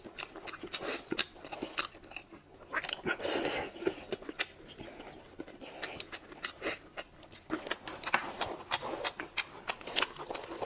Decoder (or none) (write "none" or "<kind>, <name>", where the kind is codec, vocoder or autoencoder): none